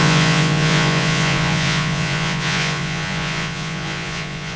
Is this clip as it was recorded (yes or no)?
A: no